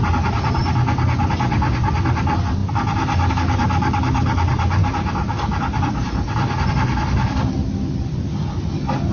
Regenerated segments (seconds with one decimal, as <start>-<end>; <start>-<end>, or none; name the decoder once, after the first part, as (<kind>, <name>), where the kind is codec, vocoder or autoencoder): none